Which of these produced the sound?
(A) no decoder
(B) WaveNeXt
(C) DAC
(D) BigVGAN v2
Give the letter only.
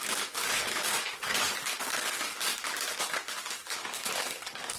C